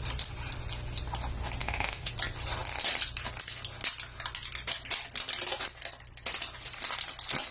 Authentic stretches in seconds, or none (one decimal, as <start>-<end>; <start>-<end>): 0.0-1.6; 2.1-7.5